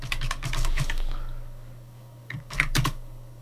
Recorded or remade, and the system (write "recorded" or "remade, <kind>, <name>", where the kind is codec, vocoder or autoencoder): remade, codec, DAC